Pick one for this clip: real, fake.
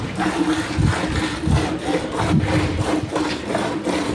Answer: real